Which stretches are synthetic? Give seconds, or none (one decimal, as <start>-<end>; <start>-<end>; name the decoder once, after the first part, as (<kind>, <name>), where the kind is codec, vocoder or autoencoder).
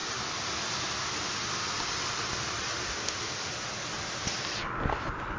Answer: 2.9-3.5 (autoencoder, DAC-VAE)